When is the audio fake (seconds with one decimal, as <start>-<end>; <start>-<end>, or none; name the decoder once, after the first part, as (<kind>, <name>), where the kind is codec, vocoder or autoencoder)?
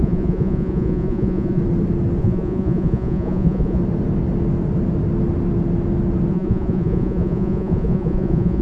0.0-1.6 (vocoder, Vocos); 2.2-3.8; 6.3-8.6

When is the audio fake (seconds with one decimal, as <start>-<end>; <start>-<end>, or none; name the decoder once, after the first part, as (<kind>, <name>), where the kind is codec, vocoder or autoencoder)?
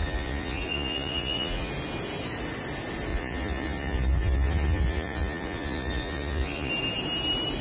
0.0-1.7 (vocoder, Vocos); 3.1-6.7